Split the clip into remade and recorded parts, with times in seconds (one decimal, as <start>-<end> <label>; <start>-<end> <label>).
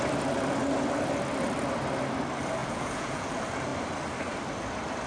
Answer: 0.0-2.6 recorded; 2.6-3.3 remade; 3.3-5.1 recorded